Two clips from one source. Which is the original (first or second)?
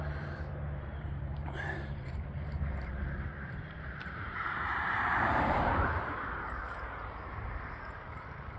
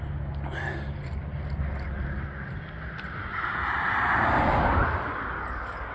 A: second